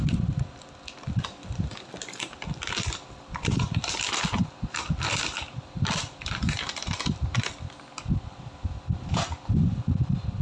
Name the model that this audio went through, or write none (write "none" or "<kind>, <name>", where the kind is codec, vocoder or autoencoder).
none